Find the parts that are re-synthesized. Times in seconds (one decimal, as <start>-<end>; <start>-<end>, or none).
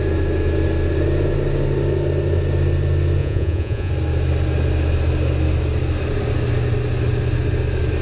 3.2-3.9